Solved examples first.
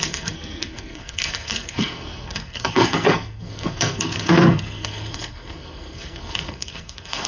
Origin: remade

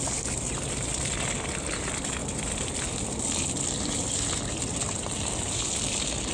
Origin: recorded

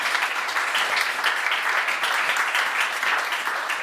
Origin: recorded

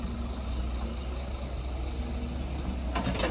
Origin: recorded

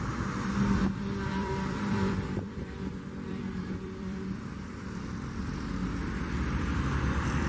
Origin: remade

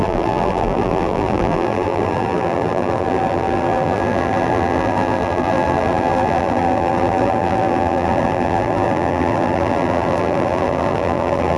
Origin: remade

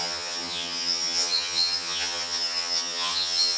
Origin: remade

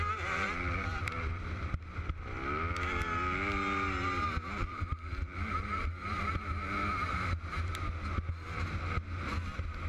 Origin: recorded